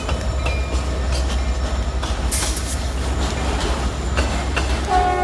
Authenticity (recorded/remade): recorded